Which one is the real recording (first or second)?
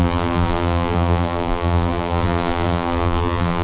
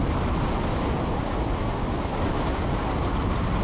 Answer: second